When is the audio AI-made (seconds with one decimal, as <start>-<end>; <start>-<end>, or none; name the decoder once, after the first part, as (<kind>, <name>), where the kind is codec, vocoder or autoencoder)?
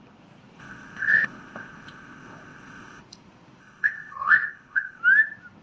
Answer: 0.6-3.0 (codec, ZipCodec); 3.6-5.0